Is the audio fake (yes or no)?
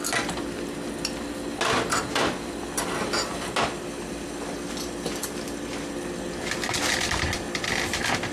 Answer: no